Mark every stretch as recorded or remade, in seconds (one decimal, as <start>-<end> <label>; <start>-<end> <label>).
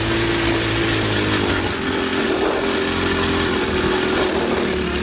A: 0.0-5.0 recorded